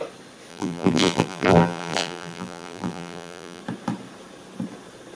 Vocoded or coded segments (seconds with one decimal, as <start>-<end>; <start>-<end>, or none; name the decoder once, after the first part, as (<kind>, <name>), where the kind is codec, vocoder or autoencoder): 0.5-3.6 (vocoder, BigVGAN v2)